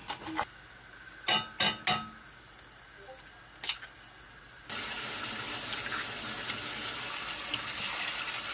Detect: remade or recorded recorded